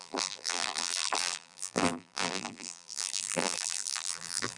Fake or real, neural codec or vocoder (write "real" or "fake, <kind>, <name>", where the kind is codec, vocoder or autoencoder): fake, vocoder, BigVGAN v2